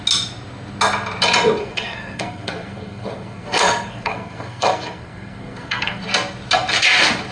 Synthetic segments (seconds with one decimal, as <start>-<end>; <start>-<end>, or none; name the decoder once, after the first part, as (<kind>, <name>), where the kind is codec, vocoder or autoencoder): 1.6-6.0 (codec, SNAC)